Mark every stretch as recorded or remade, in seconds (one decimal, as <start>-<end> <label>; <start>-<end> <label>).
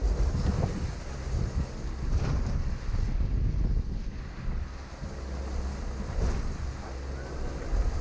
0.0-8.0 recorded